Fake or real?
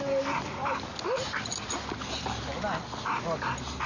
real